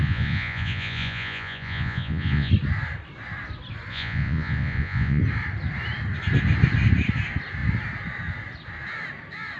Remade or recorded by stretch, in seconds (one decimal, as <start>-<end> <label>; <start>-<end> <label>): 0.0-2.5 remade; 2.5-3.9 recorded; 3.9-5.2 remade; 5.2-9.6 recorded